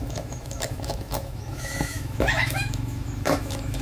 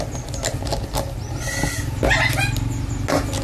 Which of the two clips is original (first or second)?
second